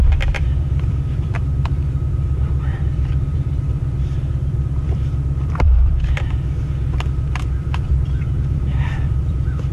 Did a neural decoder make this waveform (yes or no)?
yes